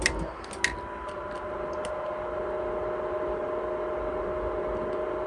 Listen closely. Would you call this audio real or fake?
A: real